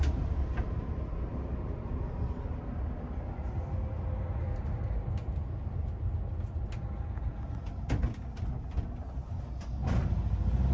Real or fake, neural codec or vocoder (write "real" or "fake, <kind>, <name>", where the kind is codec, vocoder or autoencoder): real